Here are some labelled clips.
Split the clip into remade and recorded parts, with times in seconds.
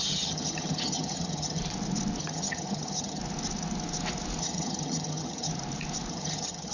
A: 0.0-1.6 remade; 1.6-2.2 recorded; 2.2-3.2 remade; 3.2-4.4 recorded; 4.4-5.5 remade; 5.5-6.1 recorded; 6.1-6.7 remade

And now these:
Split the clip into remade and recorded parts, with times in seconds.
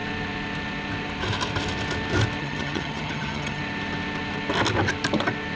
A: 0.0-2.4 recorded; 2.4-3.6 remade; 3.6-5.6 recorded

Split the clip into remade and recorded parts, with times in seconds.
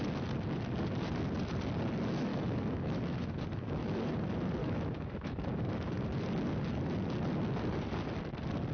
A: 0.0-2.3 recorded; 2.3-4.0 remade; 4.0-4.6 recorded; 4.6-5.9 remade; 5.9-8.7 recorded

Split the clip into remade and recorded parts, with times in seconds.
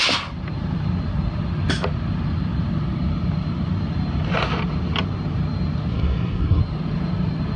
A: 0.0-5.9 recorded; 5.9-6.6 remade; 6.6-7.6 recorded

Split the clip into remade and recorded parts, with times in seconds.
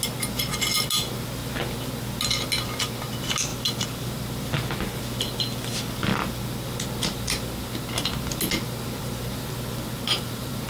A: 0.0-10.7 recorded